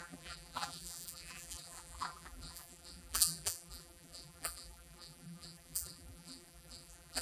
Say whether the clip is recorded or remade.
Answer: remade